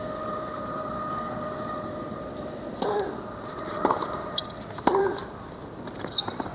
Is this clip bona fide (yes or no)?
no